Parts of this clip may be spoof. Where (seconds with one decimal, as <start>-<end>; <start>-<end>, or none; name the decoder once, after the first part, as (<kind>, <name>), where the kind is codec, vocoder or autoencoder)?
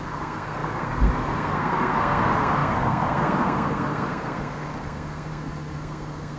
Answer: 0.0-6.4 (codec, SNAC)